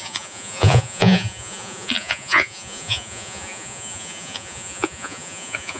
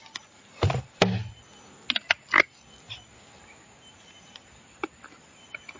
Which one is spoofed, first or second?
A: first